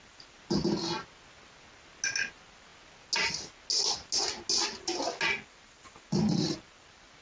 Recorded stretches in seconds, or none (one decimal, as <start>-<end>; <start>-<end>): 0.0-7.2